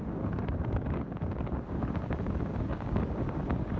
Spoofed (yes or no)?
yes